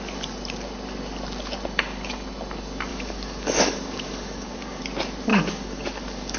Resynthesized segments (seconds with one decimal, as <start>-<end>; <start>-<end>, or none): 2.9-4.8; 5.3-6.4